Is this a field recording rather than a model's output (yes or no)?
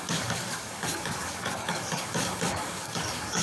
no